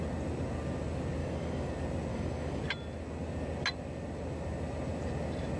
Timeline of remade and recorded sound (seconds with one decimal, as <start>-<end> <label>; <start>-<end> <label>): 0.0-1.2 recorded; 1.2-1.7 remade; 1.7-2.1 recorded; 2.1-2.6 remade; 2.6-5.6 recorded